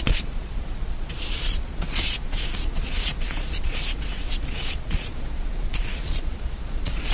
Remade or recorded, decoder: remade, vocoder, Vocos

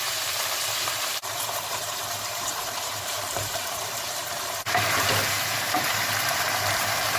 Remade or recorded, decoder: remade, vocoder, BigVGAN v2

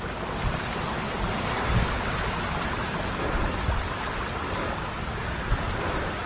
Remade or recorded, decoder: recorded